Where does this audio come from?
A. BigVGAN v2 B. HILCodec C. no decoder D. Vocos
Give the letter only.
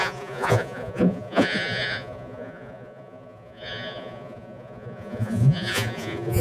D